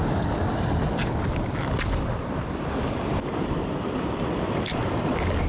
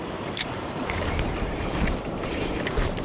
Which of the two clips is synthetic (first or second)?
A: second